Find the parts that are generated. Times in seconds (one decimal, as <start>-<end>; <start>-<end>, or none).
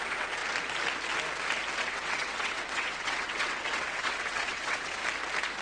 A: 0.0-0.4; 1.8-5.0